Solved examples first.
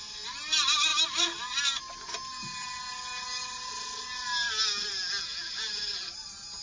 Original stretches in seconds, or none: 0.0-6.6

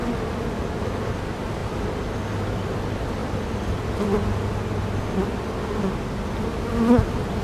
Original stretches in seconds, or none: 0.0-7.4

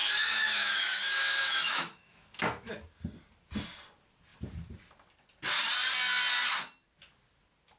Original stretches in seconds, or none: 2.7-7.8

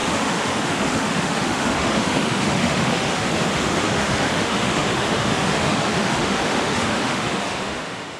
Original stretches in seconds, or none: none

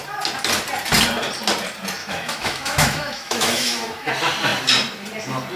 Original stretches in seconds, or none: 0.0-2.0; 4.1-5.6

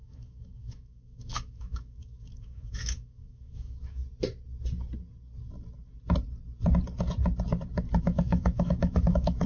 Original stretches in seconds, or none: 4.0-8.0

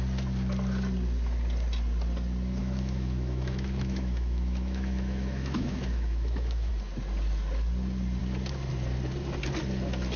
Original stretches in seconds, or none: 0.0-2.6; 6.7-10.2